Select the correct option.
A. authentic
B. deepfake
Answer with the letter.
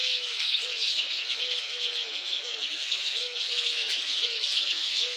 B